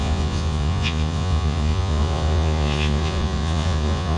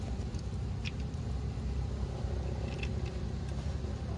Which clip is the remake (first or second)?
first